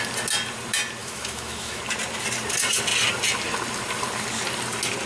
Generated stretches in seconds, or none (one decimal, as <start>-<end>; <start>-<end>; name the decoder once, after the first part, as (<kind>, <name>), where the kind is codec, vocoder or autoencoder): 1.0-1.8 (autoencoder, DAC-VAE)